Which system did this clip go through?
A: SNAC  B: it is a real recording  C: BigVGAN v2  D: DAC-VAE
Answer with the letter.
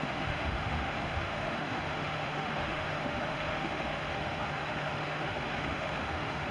D